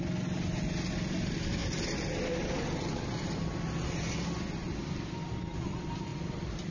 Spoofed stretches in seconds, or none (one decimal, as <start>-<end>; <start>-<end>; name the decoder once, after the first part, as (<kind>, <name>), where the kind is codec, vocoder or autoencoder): 6.1-6.7 (vocoder, BigVGAN v2)